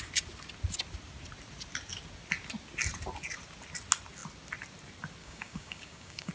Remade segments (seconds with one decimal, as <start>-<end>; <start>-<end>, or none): 5.2-6.3